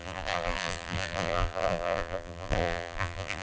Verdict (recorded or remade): remade